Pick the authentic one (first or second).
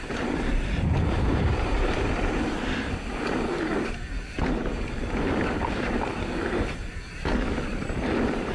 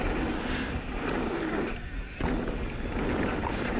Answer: second